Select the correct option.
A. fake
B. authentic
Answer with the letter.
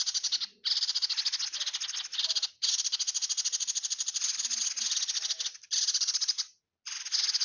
B